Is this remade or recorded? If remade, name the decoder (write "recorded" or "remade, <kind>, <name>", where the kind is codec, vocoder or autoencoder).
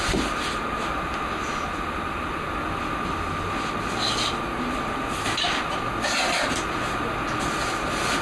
recorded